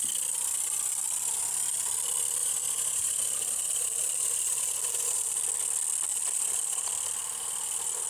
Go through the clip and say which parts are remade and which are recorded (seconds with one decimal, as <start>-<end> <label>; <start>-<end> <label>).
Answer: 0.0-2.4 recorded; 2.4-5.4 remade; 5.4-6.1 recorded; 6.1-6.9 remade; 6.9-8.1 recorded